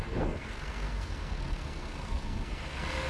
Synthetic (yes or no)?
yes